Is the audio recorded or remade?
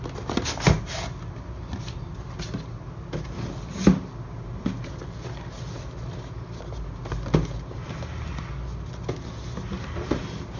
recorded